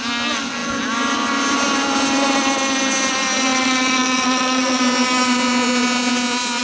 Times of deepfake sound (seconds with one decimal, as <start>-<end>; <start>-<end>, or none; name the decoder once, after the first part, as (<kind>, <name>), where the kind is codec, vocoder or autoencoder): 3.5-4.8 (vocoder, Vocos)